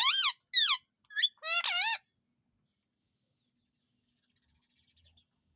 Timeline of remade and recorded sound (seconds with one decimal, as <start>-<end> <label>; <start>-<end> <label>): 0.0-5.6 recorded